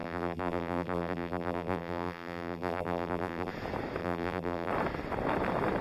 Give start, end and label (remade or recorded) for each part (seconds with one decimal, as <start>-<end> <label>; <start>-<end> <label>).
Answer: 0.0-3.5 remade; 3.5-4.0 recorded; 4.0-4.7 remade; 4.7-5.8 recorded